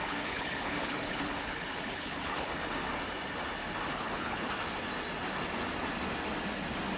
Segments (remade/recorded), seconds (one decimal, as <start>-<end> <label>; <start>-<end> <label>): 0.0-2.5 remade; 2.5-3.9 recorded; 3.9-4.5 remade; 4.5-7.0 recorded